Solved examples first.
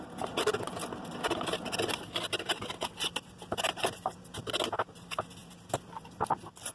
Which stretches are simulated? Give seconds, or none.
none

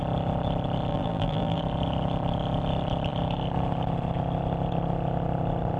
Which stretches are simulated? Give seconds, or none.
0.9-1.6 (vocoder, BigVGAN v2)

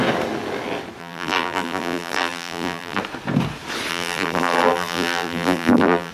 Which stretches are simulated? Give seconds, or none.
1.0-3.0 (vocoder, BigVGAN v2); 3.9-6.1

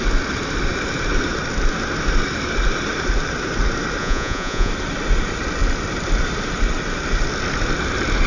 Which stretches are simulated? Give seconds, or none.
4.0-4.7 (vocoder, Vocos)